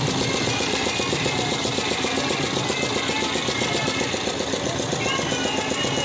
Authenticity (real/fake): real